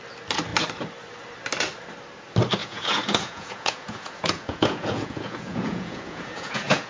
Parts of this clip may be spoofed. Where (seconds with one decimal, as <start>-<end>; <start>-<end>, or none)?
2.6-6.9